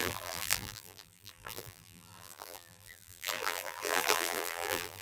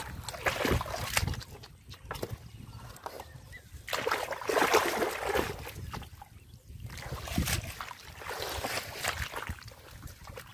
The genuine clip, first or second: second